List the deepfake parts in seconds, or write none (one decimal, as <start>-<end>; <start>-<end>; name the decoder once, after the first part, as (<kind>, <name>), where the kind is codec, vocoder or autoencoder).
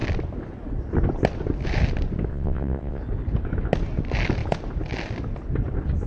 2.3-3.0 (vocoder, WaveNeXt)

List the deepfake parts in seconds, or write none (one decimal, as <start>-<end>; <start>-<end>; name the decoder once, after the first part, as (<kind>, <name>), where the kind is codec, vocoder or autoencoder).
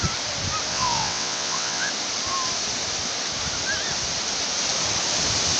0.7-1.9 (vocoder, WaveNeXt)